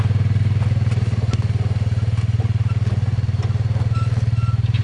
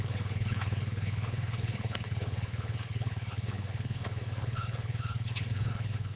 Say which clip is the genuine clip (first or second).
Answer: first